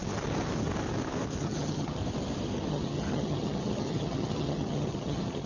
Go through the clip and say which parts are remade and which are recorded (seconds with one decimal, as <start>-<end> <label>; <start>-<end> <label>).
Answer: 0.0-1.4 recorded; 1.4-2.0 remade; 2.0-2.7 recorded; 2.7-5.5 remade